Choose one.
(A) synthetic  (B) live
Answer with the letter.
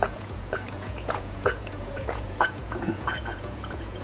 A